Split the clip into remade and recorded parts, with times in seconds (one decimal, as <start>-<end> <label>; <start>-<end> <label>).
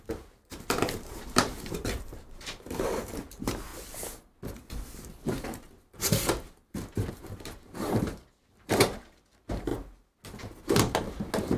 0.0-3.7 remade; 3.7-7.1 recorded; 7.1-9.7 remade; 9.7-11.6 recorded